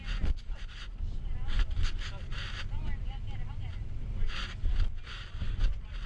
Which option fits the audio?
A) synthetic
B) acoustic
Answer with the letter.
B